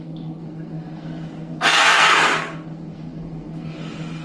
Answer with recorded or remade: remade